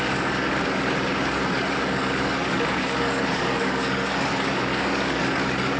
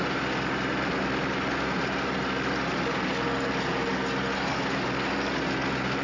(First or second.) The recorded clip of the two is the second